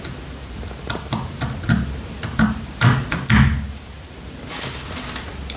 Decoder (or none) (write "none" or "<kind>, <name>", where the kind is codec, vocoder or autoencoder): none